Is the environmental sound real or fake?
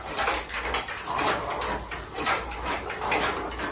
real